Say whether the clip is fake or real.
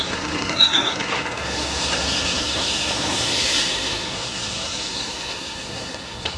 fake